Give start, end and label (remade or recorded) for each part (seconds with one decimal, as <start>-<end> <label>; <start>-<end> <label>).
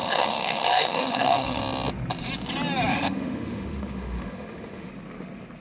0.0-1.6 remade; 1.6-2.9 recorded; 2.9-4.9 remade; 4.9-5.6 recorded